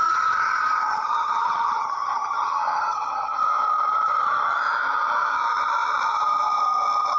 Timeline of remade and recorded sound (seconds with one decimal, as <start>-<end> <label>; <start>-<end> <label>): 0.0-3.4 remade; 3.4-7.2 recorded